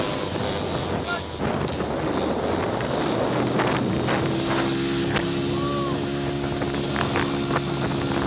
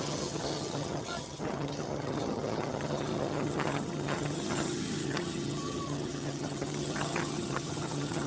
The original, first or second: first